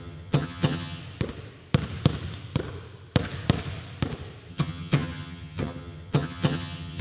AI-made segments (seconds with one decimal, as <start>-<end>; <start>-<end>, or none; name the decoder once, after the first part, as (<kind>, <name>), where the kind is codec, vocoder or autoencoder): 0.0-1.0 (vocoder, HiFi-GAN); 4.5-7.0